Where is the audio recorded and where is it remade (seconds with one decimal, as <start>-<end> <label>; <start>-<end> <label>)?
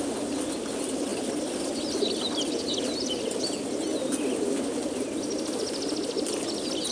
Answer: 0.0-6.9 recorded